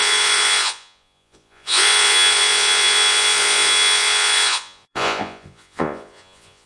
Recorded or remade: remade